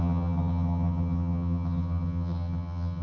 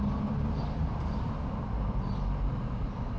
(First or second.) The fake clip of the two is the first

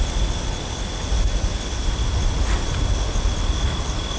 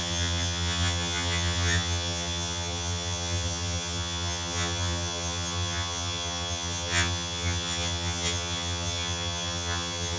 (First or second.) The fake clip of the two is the second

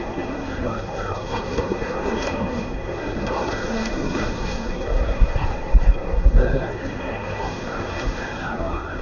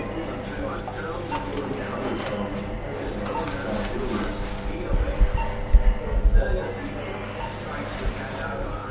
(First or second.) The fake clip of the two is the first